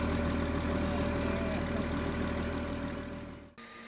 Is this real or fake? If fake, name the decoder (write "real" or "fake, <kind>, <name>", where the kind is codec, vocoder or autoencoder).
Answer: real